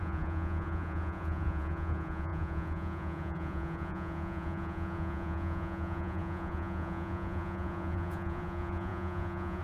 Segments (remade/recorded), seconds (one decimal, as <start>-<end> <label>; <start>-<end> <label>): 0.0-9.6 remade

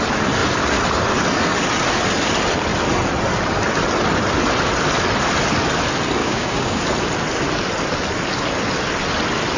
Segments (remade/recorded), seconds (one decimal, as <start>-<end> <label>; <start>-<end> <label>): 0.0-6.2 recorded; 6.2-6.8 remade; 6.8-9.6 recorded

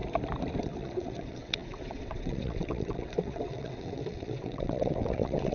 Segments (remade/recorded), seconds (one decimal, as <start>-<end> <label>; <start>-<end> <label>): 0.0-0.6 recorded; 0.6-5.5 remade

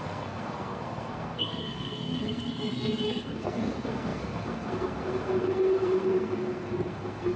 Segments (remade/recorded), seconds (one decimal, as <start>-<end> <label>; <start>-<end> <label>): 0.0-7.4 remade